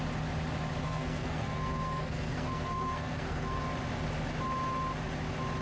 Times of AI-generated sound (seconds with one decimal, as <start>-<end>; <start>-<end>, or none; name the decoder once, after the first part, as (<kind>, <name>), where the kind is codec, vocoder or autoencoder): 0.8-3.6 (codec, SNAC)